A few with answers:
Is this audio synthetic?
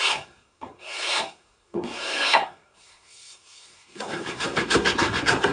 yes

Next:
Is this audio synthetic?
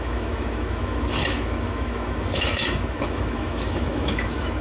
yes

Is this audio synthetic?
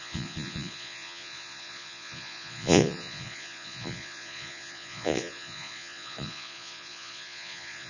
yes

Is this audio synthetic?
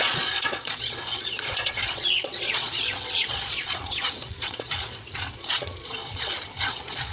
yes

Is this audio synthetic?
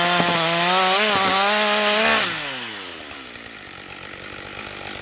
no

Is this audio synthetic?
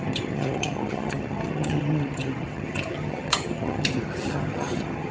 yes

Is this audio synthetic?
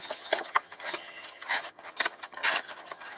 yes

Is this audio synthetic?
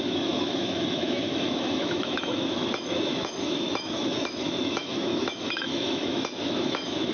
yes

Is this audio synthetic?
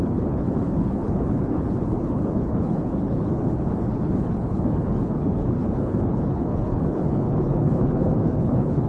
yes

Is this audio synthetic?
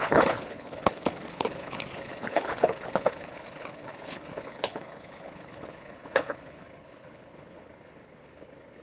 yes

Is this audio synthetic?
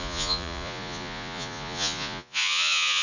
yes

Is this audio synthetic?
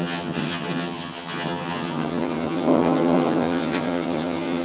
yes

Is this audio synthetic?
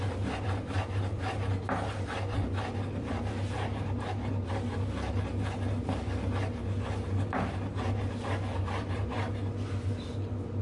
no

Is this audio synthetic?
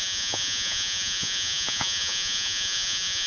yes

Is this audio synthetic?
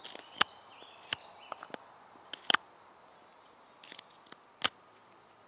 no